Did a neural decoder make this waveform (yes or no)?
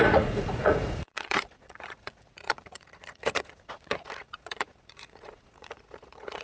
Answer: yes